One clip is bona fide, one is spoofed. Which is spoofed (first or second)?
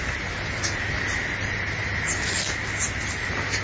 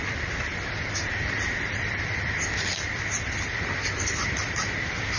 second